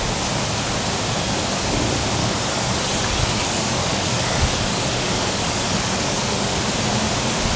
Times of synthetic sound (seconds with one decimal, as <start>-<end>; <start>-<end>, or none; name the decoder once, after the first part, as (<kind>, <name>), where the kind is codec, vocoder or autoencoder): 2.2-6.6 (codec, DAC)